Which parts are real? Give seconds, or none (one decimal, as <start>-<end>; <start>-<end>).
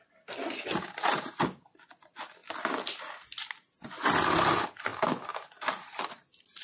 0.0-6.6